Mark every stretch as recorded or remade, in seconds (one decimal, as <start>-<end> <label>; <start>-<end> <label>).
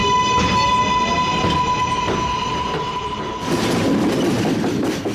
0.0-5.1 recorded